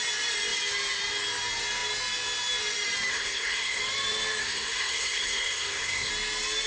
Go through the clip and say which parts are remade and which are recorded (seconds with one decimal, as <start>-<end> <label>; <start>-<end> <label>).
0.0-3.1 recorded; 3.1-3.8 remade; 3.8-4.4 recorded; 4.4-6.1 remade; 6.1-6.7 recorded